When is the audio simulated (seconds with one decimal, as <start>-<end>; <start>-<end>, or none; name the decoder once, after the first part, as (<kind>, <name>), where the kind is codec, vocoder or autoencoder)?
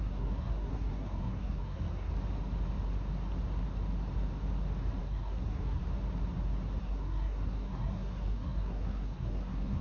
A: 0.0-2.1 (codec, SNAC); 5.0-5.8; 6.8-9.8